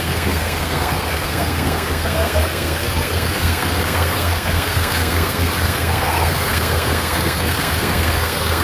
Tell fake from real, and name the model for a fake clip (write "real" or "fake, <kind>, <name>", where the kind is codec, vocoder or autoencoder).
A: fake, codec, SNAC